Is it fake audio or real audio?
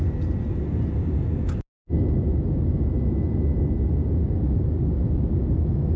real